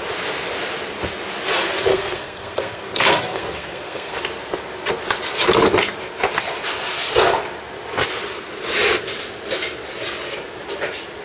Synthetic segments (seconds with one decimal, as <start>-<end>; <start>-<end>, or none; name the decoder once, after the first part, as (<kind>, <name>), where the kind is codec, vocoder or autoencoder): 1.9-4.2 (codec, SNAC)